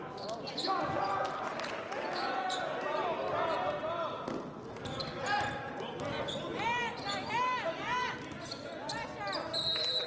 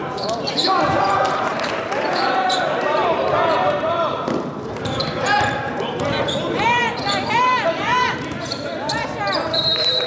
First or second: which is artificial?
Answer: second